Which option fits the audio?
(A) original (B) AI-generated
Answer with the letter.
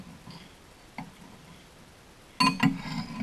A